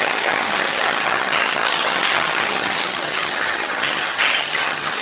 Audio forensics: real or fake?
fake